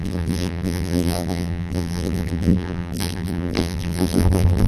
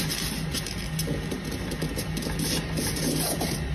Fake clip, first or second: first